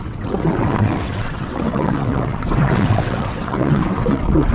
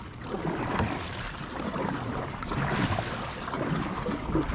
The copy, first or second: first